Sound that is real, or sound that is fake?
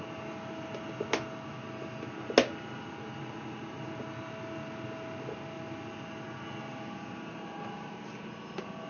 real